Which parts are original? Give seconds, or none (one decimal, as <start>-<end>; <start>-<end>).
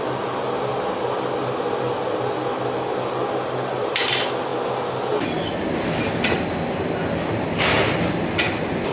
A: 0.0-8.9